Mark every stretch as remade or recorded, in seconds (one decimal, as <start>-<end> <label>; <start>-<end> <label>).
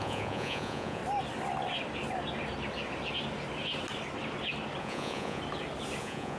0.0-1.0 remade; 1.0-4.8 recorded; 4.8-5.4 remade; 5.4-6.0 recorded; 6.0-6.4 remade